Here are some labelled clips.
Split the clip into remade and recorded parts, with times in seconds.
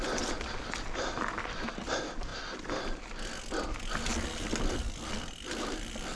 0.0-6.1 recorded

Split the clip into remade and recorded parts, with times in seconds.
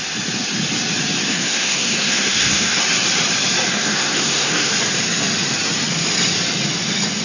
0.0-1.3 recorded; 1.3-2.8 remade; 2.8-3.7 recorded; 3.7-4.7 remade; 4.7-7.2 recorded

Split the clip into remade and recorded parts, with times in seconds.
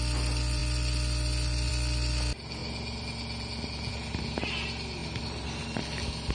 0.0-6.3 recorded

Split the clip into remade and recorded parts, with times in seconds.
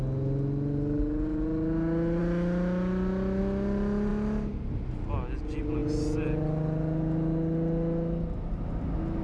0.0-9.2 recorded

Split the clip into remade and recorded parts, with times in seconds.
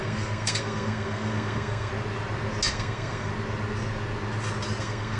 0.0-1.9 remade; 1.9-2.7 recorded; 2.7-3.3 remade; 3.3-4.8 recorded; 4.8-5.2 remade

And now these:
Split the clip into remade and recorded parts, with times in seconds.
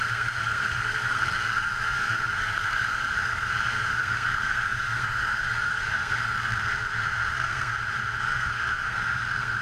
0.0-7.7 remade; 7.7-8.2 recorded; 8.2-9.6 remade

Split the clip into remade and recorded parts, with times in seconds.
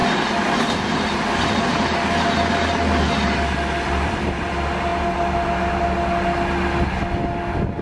0.0-7.8 recorded